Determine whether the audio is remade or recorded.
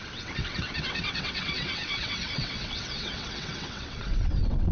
remade